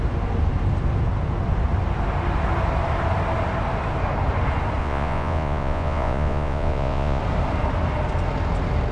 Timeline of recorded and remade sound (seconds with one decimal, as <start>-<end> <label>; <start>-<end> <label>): 0.0-4.8 recorded; 4.8-7.2 remade; 7.2-8.9 recorded